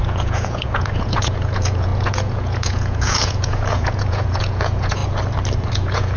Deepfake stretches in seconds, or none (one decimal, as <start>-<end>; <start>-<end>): 0.0-5.0; 5.7-6.2

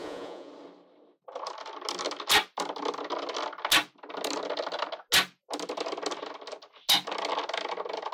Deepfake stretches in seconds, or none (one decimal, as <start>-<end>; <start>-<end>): 0.0-0.5

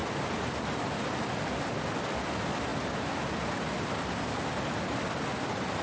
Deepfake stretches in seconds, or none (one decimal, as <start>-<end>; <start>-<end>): none

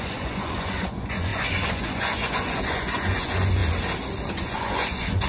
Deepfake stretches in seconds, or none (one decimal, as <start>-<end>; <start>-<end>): 0.0-3.6; 4.3-5.3

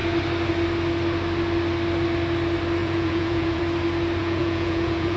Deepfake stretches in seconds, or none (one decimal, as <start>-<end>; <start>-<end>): 2.8-3.6; 4.2-5.2